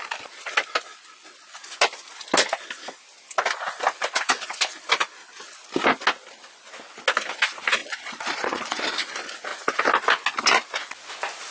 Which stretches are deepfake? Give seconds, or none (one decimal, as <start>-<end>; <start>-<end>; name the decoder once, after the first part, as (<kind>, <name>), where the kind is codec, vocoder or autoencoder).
7.8-8.8 (vocoder, Vocos)